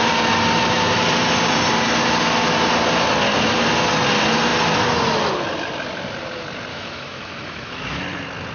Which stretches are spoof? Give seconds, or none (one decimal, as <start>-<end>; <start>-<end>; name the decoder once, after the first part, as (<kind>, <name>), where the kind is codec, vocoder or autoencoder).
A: 6.7-8.0 (autoencoder, DAC-VAE)